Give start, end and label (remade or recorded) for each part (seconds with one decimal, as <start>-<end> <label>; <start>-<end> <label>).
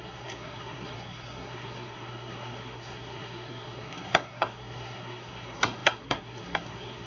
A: 0.0-7.1 remade